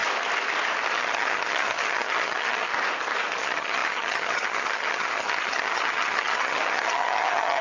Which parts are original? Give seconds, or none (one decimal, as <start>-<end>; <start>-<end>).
0.0-0.9; 2.7-3.4